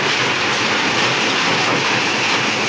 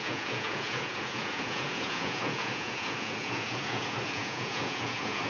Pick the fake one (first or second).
second